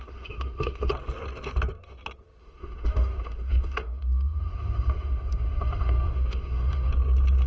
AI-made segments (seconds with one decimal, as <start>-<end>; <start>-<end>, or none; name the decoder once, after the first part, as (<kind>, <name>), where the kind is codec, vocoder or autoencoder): 0.0-0.9 (autoencoder, DAC-VAE); 2.4-6.9